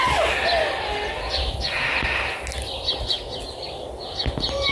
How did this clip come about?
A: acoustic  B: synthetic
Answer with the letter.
A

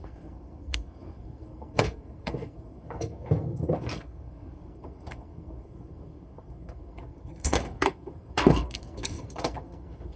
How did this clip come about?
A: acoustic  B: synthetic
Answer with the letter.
B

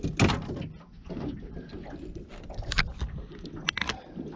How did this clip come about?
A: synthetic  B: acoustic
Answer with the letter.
B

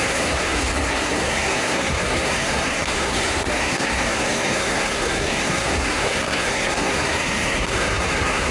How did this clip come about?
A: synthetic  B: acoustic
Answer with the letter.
A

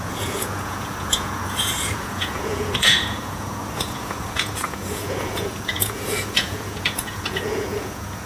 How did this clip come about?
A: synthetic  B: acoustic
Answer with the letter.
A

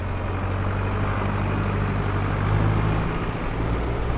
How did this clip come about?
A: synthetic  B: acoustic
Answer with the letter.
B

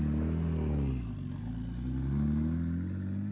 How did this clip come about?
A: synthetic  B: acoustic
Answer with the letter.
B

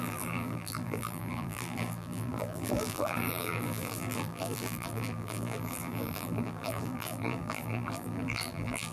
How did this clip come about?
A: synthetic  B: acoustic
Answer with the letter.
A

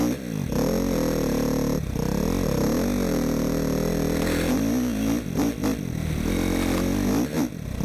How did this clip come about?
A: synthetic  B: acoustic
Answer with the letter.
B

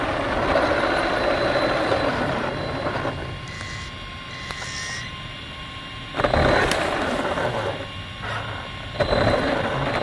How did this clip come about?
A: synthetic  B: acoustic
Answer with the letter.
B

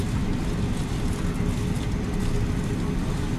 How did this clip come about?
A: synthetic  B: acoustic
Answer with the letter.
B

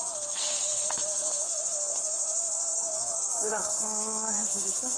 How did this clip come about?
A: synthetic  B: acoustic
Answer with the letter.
A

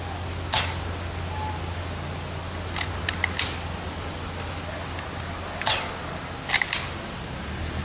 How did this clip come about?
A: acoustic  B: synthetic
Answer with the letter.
A